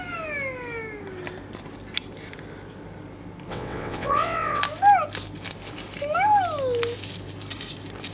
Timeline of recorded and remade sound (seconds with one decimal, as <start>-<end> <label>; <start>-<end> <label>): 0.0-3.5 recorded; 3.5-4.6 remade; 4.6-8.1 recorded